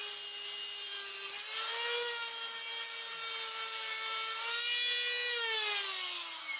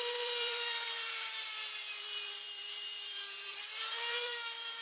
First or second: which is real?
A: first